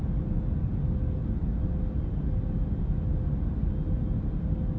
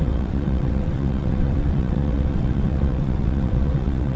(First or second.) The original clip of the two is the first